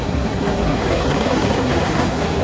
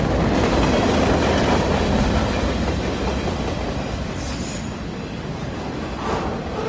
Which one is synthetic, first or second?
first